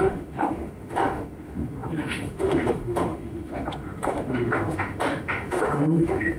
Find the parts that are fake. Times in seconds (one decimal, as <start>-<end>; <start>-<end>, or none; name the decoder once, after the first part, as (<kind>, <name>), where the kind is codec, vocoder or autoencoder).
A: 0.0-6.4 (autoencoder, DAC-VAE)